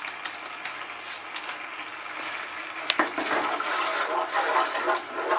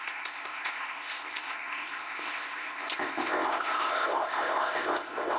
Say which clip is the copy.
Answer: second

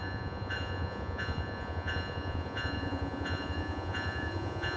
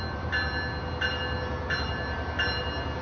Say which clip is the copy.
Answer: first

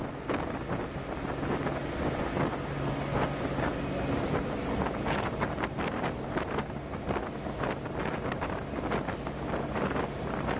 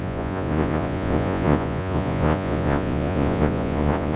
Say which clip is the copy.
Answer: second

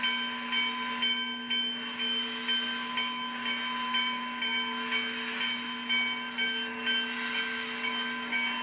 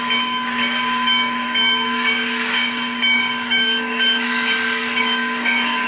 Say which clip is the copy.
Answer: second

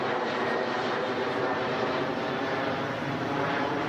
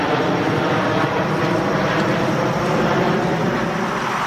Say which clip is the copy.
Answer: second